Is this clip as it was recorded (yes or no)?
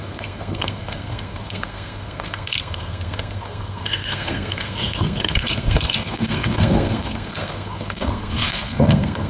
no